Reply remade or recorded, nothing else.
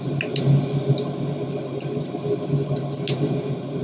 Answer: recorded